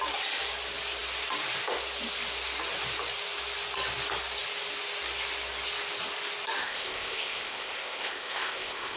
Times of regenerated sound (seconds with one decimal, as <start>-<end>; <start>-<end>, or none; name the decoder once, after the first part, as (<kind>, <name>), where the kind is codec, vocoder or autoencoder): 6.6-9.0 (codec, ZipCodec)